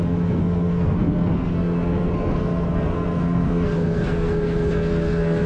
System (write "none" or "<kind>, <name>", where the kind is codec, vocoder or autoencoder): codec, SNAC